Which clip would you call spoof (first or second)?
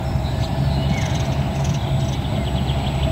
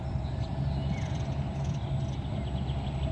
second